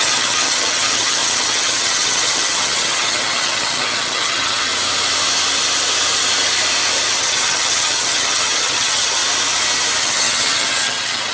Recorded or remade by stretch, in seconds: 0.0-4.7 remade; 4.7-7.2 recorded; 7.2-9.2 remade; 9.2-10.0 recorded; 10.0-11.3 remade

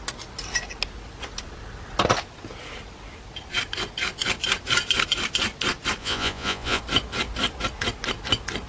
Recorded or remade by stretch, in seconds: 0.0-6.0 recorded; 6.0-6.8 remade; 6.8-8.7 recorded

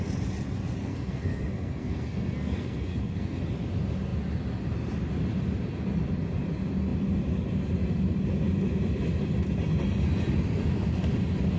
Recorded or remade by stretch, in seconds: 0.0-0.8 recorded; 0.8-3.4 remade; 3.4-11.6 recorded

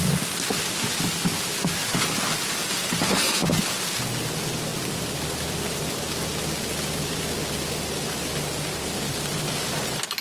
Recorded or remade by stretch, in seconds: 0.0-10.2 recorded

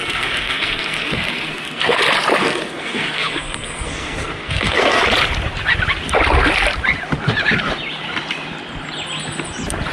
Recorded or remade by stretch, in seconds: 0.0-2.0 remade; 2.0-2.4 recorded; 2.4-5.0 remade; 5.0-9.9 recorded

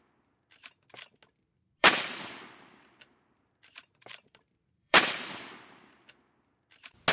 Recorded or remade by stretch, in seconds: 0.0-1.8 recorded; 1.8-5.9 remade; 5.9-7.1 recorded

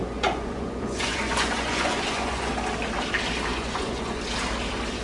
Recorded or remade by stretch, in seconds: 0.0-2.5 remade; 2.5-3.5 recorded; 3.5-4.2 remade; 4.2-5.0 recorded